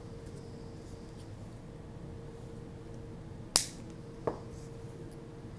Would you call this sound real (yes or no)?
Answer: yes